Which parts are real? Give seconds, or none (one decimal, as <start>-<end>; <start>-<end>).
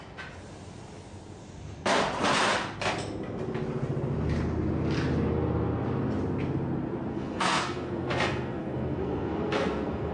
0.0-7.1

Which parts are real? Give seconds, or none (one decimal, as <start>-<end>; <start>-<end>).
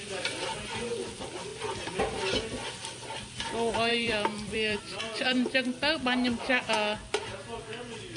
0.0-3.9; 5.0-8.2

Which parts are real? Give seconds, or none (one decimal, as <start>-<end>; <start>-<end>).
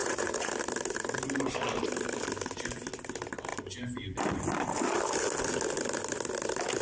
0.5-6.8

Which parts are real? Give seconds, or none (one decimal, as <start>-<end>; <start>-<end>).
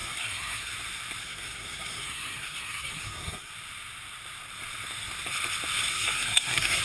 0.7-1.2; 3.5-5.9